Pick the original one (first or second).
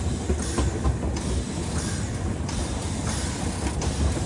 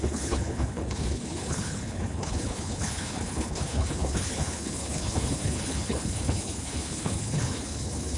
first